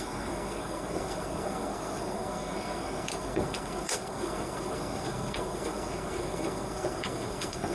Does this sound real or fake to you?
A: fake